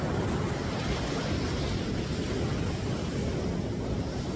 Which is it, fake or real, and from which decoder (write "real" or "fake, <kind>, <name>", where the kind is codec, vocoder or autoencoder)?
real